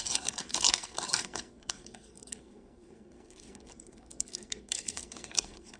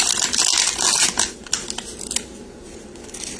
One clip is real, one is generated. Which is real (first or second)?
second